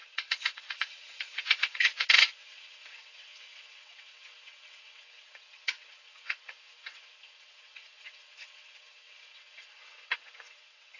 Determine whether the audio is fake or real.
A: fake